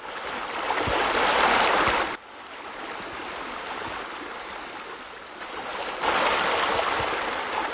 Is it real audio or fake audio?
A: real